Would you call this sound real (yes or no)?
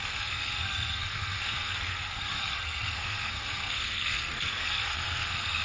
no